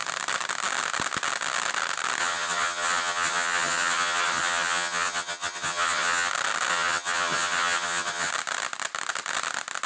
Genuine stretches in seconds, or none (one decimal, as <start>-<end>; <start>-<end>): 0.0-2.2; 6.3-6.7; 8.3-9.9